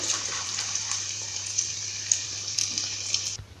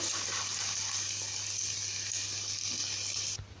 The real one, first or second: second